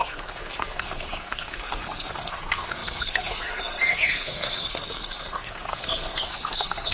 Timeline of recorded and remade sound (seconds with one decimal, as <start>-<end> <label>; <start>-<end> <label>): 0.0-6.9 remade